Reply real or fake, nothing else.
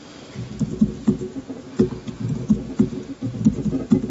real